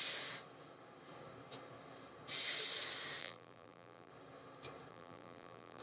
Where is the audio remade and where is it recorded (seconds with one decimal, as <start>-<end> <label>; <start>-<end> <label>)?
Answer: 0.0-3.2 recorded; 3.2-4.1 remade; 4.1-4.9 recorded; 4.9-5.8 remade